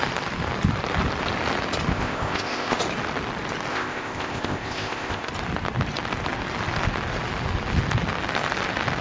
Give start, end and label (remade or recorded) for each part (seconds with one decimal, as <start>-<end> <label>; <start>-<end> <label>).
0.0-1.9 recorded; 1.9-2.8 remade; 2.8-3.7 recorded; 3.7-5.3 remade; 5.3-9.0 recorded